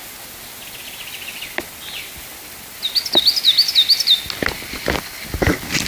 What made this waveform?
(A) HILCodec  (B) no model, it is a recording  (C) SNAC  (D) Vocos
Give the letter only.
B